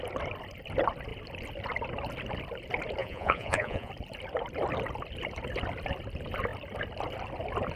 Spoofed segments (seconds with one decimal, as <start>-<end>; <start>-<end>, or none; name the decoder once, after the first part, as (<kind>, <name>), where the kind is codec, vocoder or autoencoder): 3.0-3.9 (vocoder, Vocos)